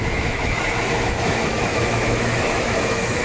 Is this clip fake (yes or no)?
yes